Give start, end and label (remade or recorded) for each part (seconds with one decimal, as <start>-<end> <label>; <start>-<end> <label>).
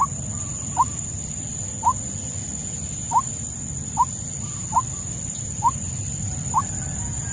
0.0-7.3 recorded